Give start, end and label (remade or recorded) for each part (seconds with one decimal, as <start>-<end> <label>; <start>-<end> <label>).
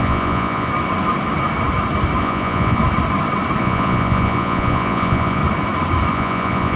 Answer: 0.0-0.7 remade; 0.7-2.2 recorded; 2.2-2.8 remade; 2.8-3.6 recorded; 3.6-5.4 remade; 5.4-6.1 recorded; 6.1-6.8 remade